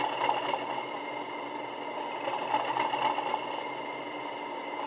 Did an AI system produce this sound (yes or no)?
no